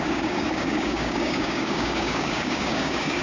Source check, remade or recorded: remade